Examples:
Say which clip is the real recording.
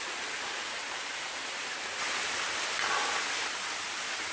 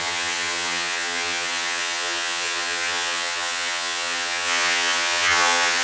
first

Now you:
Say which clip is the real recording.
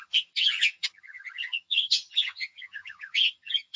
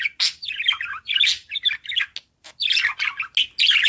second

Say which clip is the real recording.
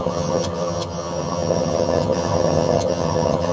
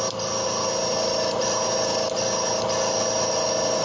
second